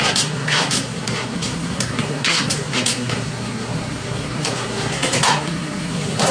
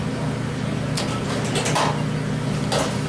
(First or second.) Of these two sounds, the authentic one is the second